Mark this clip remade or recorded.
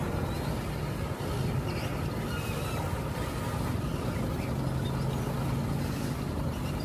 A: recorded